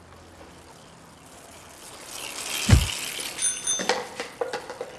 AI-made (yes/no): no